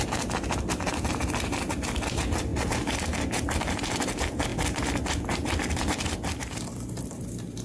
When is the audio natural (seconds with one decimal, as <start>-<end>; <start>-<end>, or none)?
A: 2.5-3.6